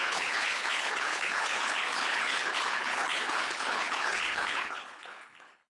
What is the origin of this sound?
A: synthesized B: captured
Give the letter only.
A